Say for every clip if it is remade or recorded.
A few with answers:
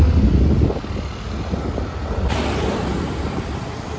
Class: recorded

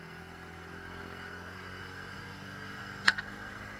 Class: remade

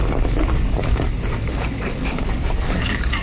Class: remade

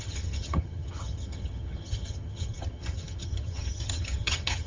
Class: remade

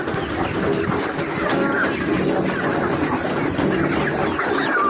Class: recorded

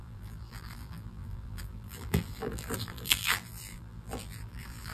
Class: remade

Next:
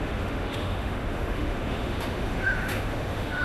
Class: remade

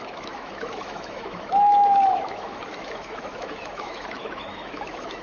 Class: remade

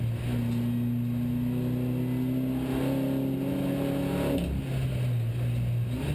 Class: recorded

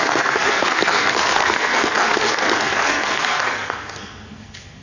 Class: remade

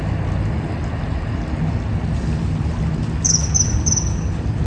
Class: recorded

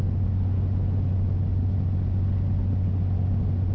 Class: recorded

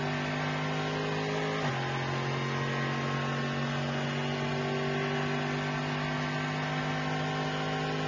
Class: recorded